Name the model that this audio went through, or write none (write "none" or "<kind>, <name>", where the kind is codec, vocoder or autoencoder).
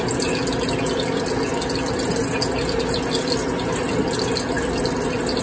none